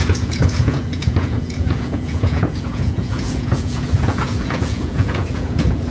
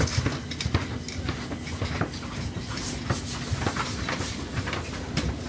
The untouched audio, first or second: second